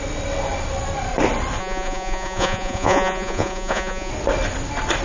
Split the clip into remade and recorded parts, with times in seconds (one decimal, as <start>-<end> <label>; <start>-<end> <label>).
0.0-1.6 recorded; 1.6-4.1 remade; 4.1-5.0 recorded